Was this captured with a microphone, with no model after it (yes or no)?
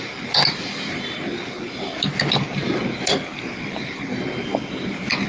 yes